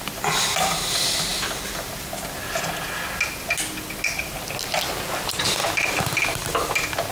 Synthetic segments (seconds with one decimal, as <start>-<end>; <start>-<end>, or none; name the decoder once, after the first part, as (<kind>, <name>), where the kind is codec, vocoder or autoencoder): none